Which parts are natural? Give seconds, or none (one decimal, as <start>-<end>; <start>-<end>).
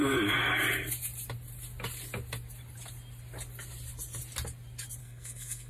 0.0-5.0